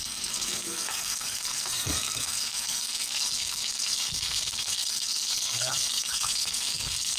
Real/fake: fake